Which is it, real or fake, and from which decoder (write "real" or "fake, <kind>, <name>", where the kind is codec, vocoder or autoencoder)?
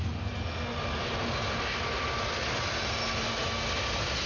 real